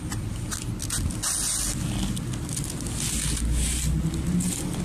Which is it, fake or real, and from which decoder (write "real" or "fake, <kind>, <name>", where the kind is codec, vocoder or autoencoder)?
real